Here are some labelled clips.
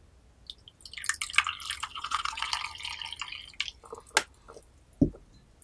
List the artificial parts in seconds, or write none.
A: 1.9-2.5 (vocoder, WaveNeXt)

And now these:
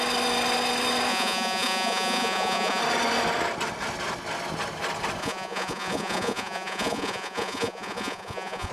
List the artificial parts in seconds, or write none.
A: 1.1-2.8 (vocoder, Vocos); 5.2-8.7

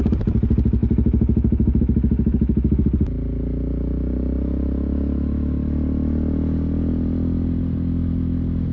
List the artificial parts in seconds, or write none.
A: none

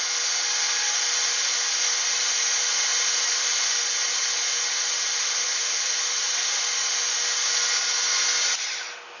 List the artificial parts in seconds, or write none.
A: 4.7-6.6 (vocoder, Vocos)

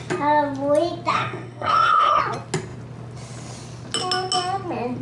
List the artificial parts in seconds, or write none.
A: 1.1-2.2 (codec, SNAC)

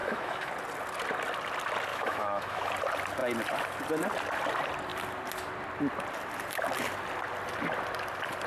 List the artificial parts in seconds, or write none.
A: 0.0-0.5 (autoencoder, DAC-VAE); 1.9-2.7

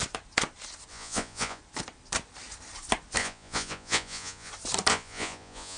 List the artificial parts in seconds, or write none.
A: 0.9-1.6 (vocoder, Vocos); 3.2-4.5; 4.9-5.8

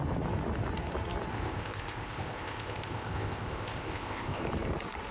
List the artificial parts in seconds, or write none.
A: 1.3-4.4 (codec, ZipCodec)